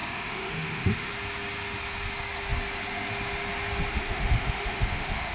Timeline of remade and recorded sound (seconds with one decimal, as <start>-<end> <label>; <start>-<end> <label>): 0.0-1.1 remade; 1.1-3.9 recorded; 3.9-5.3 remade

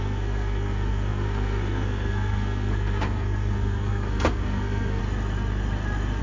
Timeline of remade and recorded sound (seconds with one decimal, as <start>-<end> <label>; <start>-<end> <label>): 0.0-5.0 remade; 5.0-6.2 recorded

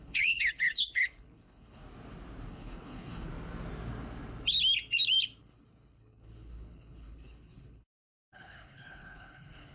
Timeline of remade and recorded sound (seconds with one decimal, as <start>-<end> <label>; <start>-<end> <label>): 0.0-1.8 remade; 1.8-2.5 recorded; 2.5-3.3 remade; 3.3-5.4 recorded; 5.4-9.7 remade

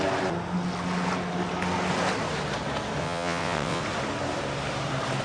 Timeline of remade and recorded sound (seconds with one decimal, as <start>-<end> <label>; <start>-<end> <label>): 0.0-3.0 recorded; 3.0-3.8 remade; 3.8-5.2 recorded